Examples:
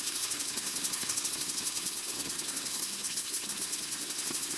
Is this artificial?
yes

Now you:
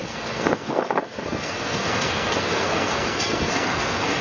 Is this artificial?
yes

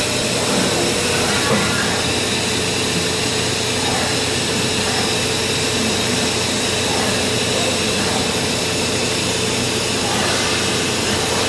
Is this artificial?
no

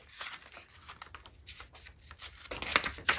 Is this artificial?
no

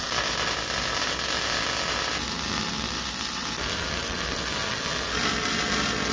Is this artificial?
no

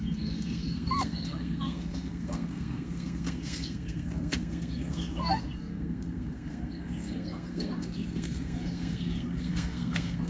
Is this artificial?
yes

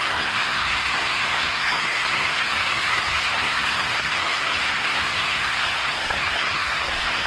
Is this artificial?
yes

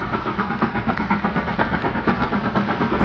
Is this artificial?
yes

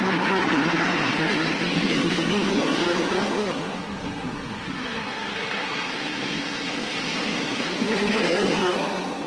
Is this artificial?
yes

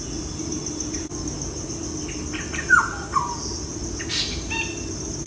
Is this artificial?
no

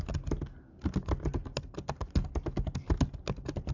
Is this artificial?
no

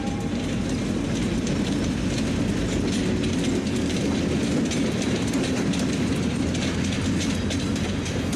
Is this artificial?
no